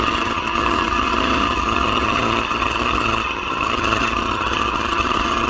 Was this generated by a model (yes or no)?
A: yes